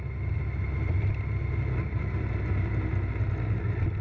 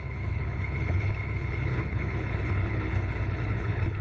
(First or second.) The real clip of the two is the first